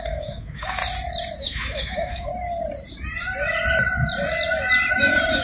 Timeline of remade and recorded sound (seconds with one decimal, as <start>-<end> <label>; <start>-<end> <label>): 0.0-0.8 remade; 0.8-1.4 recorded; 1.4-2.3 remade; 2.3-4.9 recorded; 4.9-5.4 remade